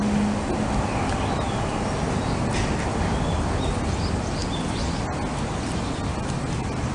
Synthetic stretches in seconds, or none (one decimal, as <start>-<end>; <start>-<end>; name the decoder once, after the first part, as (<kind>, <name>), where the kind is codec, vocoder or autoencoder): none